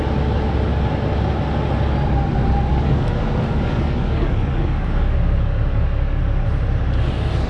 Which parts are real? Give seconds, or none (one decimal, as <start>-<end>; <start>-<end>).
0.0-2.7; 6.2-7.5